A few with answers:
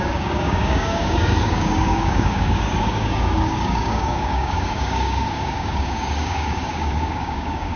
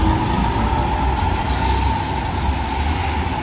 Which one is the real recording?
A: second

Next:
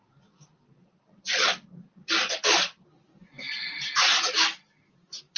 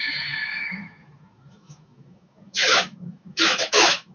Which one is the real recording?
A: first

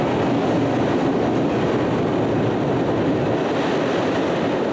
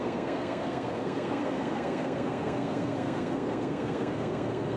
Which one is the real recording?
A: first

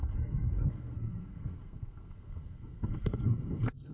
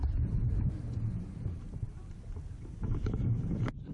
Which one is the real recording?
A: second